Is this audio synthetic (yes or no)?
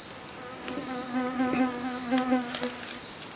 no